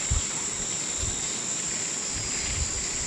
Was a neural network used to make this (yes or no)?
no